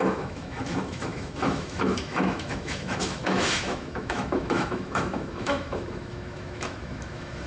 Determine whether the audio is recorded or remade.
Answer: remade